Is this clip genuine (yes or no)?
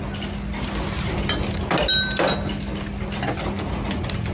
yes